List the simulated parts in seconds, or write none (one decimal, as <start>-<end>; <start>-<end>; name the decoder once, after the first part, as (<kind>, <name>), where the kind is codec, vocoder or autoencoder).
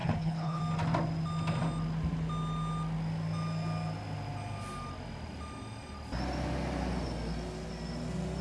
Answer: 0.0-0.6 (codec, HILCodec)